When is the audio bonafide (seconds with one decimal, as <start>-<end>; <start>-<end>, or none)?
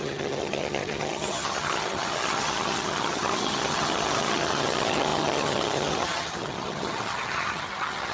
none